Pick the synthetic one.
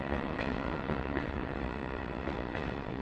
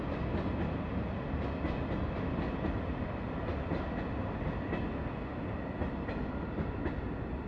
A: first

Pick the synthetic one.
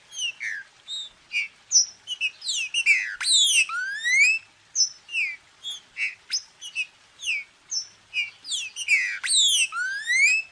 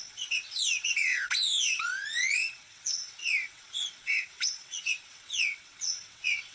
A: second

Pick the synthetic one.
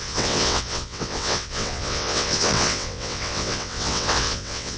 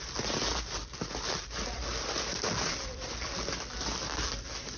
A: first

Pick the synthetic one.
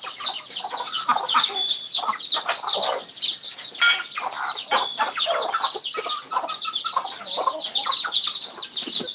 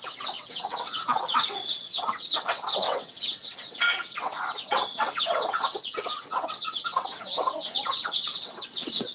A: second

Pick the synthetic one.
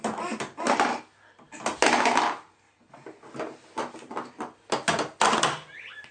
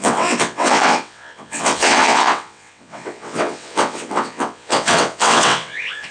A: second